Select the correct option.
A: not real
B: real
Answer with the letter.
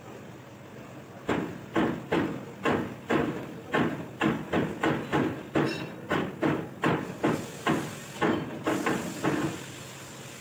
B